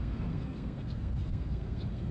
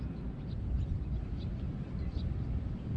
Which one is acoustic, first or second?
second